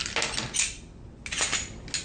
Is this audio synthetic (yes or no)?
no